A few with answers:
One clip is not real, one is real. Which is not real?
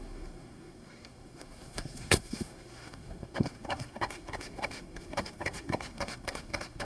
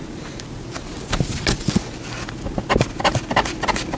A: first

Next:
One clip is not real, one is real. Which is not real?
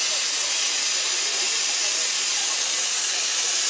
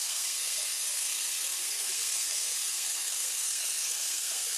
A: second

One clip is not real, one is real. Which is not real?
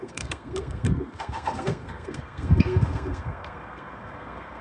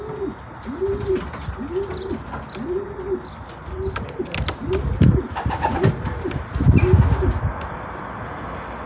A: first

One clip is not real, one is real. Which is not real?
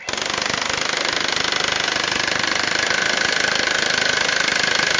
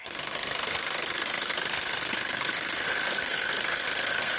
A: second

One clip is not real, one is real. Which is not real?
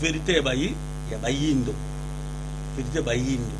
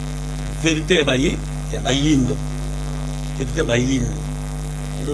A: second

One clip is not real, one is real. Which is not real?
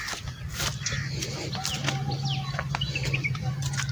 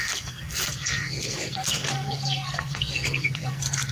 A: second